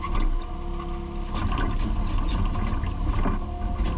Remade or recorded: recorded